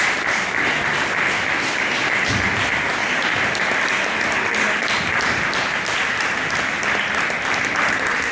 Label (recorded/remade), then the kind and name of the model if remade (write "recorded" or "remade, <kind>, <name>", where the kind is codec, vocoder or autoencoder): recorded